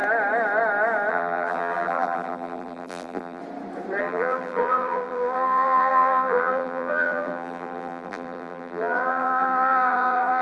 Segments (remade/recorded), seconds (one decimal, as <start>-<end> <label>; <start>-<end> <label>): 0.0-1.1 recorded; 1.1-3.4 remade; 3.4-4.0 recorded; 4.0-10.4 remade